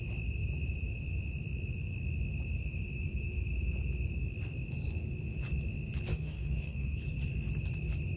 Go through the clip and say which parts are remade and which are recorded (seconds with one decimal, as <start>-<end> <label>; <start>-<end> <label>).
0.0-6.1 recorded; 6.1-7.0 remade; 7.0-8.2 recorded